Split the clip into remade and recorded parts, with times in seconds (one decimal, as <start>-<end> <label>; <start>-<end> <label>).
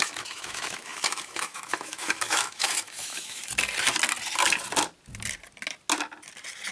0.0-3.4 remade; 3.4-6.7 recorded